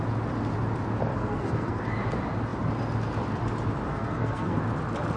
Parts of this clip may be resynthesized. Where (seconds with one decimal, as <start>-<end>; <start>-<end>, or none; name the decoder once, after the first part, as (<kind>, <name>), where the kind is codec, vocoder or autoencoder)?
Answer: 1.1-1.8 (codec, SNAC); 3.9-4.6